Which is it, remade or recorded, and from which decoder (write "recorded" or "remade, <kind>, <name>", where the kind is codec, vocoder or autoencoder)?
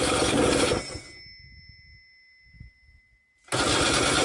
recorded